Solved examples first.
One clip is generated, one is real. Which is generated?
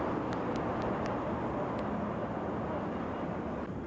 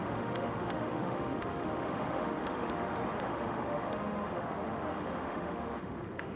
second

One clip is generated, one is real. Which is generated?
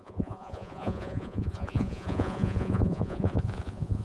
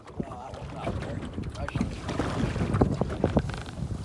first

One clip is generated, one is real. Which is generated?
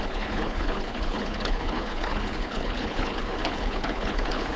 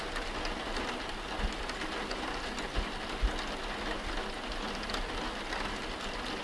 first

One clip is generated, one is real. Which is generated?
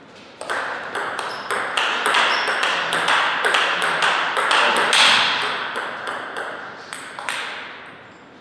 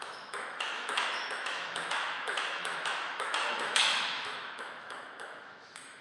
second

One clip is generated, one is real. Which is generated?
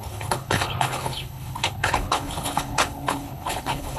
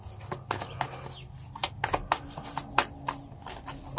first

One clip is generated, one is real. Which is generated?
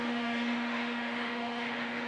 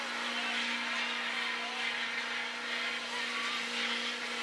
first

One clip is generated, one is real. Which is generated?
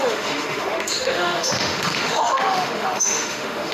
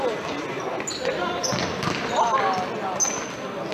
first